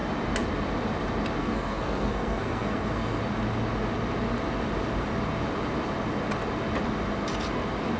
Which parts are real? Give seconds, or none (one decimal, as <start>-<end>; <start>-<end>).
0.0-1.4; 3.2-8.0